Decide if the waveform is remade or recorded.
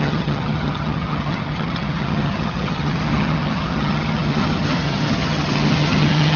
remade